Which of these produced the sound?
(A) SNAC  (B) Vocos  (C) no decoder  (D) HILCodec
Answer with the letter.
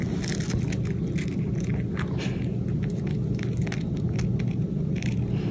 C